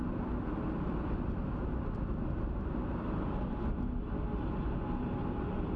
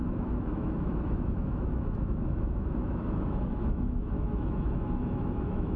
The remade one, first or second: second